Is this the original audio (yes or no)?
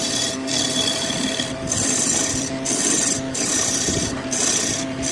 yes